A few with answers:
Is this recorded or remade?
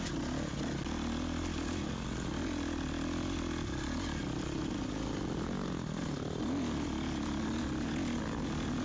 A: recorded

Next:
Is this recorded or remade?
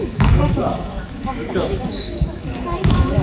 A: remade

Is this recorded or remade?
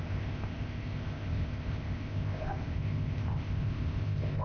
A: remade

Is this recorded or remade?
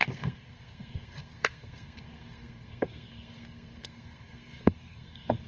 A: remade